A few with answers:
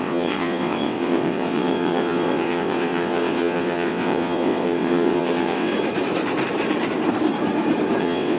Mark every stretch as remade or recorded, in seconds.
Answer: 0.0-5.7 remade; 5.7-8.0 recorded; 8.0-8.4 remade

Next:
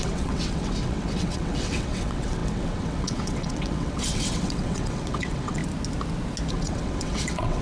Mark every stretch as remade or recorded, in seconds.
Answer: 0.0-5.6 remade; 5.6-6.5 recorded; 6.5-7.6 remade